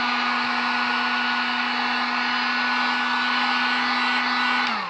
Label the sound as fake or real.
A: real